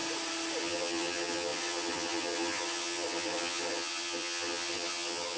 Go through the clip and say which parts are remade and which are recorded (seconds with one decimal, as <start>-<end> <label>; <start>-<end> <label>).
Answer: 0.0-0.6 recorded; 0.6-5.4 remade